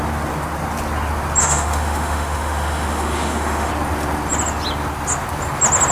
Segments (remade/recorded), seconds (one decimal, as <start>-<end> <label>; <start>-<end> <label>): 0.0-1.4 recorded; 1.4-3.7 remade; 3.7-5.9 recorded